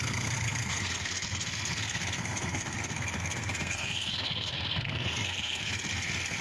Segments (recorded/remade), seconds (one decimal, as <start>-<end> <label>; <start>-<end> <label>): 0.0-6.4 remade

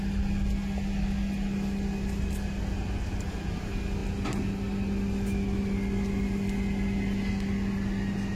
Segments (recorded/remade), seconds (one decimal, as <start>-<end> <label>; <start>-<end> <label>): 0.0-8.4 recorded

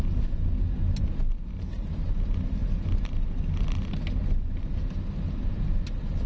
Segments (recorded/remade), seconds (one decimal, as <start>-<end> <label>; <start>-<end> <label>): 0.0-6.3 recorded

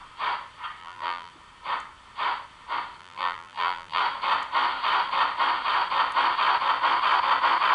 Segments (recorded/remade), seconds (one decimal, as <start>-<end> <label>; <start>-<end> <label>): 0.0-0.8 recorded; 0.8-1.3 remade; 1.3-3.0 recorded; 3.0-4.0 remade; 4.0-7.7 recorded

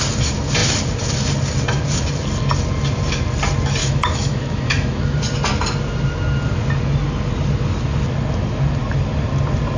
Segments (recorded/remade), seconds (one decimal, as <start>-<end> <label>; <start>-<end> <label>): 0.0-3.8 recorded; 3.8-5.2 remade; 5.2-9.8 recorded

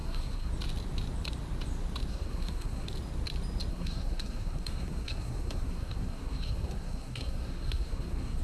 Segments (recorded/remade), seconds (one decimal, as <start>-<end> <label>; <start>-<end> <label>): 0.0-0.5 remade; 0.5-2.1 recorded; 2.1-2.9 remade; 2.9-3.7 recorded; 3.7-8.4 remade

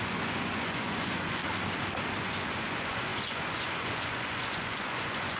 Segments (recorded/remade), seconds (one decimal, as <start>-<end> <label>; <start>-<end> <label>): 0.0-1.4 remade; 1.4-2.2 recorded; 2.2-5.4 remade

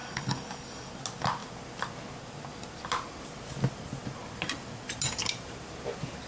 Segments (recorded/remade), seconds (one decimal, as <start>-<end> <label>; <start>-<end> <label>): 0.0-0.9 remade; 0.9-6.3 recorded